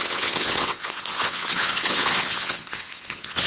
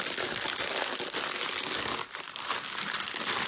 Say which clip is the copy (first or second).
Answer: first